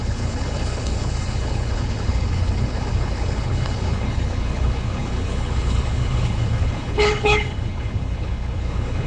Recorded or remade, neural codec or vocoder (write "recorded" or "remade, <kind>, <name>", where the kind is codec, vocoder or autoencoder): remade, codec, HILCodec